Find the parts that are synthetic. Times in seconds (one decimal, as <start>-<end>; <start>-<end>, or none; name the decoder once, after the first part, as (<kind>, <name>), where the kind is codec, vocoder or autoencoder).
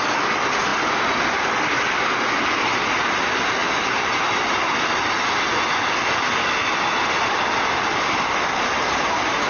none